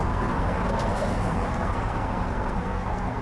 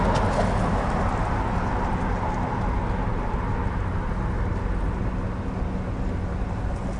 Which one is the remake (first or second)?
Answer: first